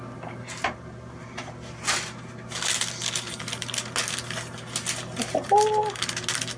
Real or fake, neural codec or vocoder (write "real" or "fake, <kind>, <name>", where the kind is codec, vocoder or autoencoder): real